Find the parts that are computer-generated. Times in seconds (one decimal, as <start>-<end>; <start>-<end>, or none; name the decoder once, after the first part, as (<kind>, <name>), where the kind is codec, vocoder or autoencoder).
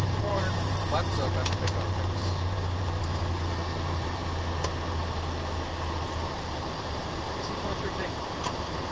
0.0-4.2 (vocoder, BigVGAN v2); 6.2-8.9